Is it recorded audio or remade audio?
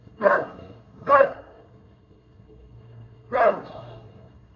remade